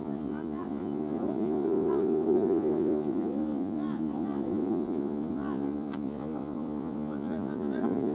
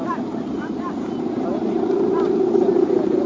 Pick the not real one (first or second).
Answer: first